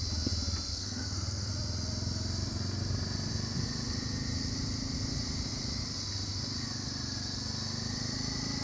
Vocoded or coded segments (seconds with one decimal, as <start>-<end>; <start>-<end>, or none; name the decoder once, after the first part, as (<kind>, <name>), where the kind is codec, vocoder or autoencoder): 0.7-1.5 (codec, SNAC)